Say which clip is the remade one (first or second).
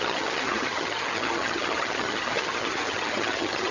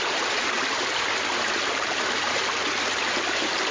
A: first